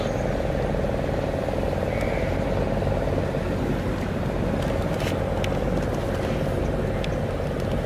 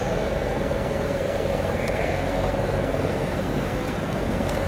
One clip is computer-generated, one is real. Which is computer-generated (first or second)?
second